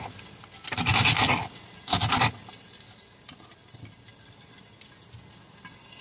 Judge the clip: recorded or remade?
recorded